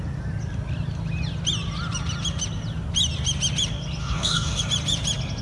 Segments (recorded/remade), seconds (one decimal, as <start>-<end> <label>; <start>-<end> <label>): 0.0-4.0 recorded; 4.0-4.6 remade; 4.6-5.4 recorded